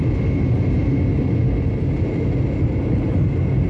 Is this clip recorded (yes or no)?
yes